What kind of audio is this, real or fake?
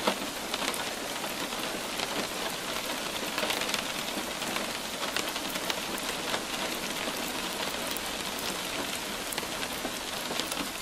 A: real